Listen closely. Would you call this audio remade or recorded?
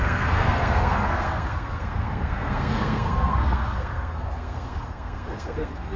remade